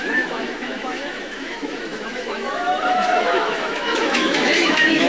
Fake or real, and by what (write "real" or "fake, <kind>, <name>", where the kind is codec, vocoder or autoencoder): fake, autoencoder, DAC-VAE